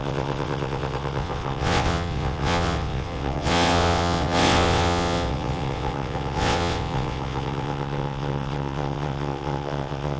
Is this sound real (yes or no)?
no